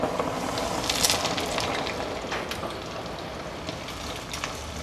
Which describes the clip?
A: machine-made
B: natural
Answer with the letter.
B